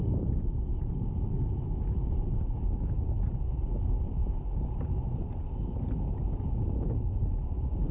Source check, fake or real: real